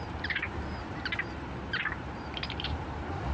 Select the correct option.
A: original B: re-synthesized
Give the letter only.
B